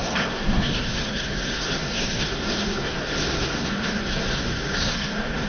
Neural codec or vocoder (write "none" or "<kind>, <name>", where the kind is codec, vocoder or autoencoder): codec, SNAC